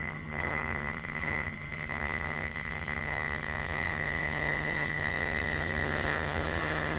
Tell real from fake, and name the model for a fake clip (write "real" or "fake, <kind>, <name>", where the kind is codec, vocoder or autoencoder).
fake, vocoder, HiFi-GAN